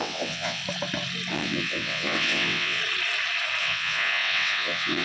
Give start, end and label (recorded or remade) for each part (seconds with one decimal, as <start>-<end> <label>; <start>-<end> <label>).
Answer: 0.0-0.6 remade; 0.6-1.3 recorded; 1.3-2.8 remade; 2.8-3.6 recorded; 3.6-5.0 remade